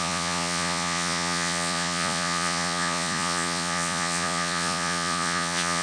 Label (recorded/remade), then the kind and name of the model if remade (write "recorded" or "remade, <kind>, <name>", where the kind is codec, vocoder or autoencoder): remade, vocoder, Vocos